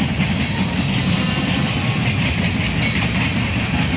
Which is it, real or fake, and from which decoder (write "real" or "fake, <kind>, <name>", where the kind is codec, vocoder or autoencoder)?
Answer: real